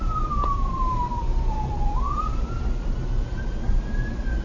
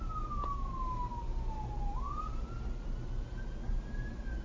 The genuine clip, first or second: second